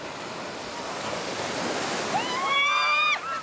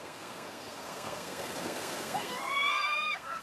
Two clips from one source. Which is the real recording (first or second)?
first